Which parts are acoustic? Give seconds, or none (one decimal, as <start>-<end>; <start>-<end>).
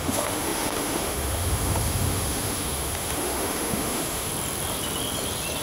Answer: 4.3-5.6